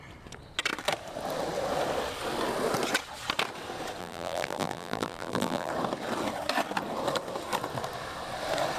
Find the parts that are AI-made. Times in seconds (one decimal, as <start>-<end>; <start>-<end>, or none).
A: 4.0-5.7